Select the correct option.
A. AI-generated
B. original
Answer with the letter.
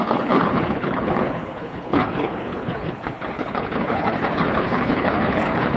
A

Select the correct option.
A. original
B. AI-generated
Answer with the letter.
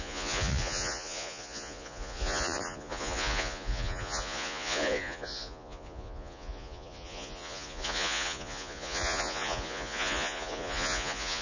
B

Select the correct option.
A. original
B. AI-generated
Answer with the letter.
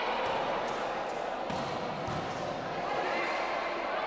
A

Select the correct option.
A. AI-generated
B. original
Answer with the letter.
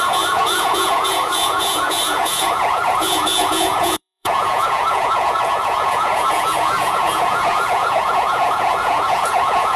A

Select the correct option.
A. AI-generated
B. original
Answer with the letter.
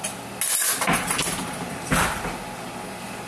B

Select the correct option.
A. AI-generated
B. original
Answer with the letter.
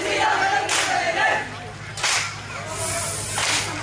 B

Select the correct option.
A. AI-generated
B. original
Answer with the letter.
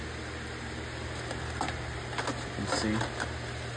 B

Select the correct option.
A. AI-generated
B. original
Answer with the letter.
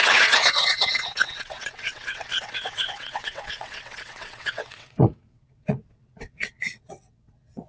A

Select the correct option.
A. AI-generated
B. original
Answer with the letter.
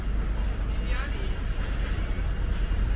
B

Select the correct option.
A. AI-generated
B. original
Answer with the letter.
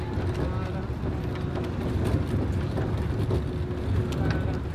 B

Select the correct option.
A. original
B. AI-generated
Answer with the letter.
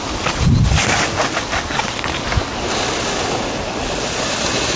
A